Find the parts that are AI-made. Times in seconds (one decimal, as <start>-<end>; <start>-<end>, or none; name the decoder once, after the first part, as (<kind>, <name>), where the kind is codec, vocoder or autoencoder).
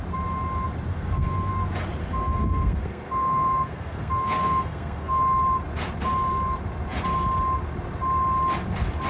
0.9-1.5 (codec, SNAC); 2.0-5.2